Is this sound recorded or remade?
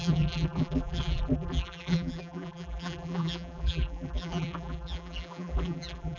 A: remade